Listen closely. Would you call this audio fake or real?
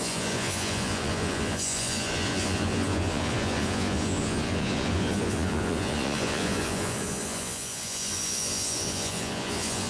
fake